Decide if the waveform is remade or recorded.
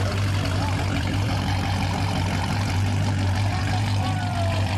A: remade